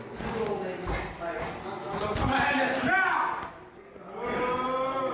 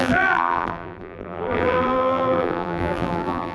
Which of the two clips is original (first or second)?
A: first